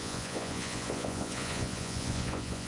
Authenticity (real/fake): fake